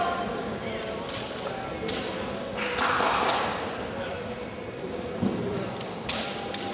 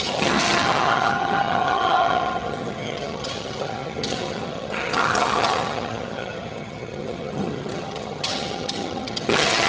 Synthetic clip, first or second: second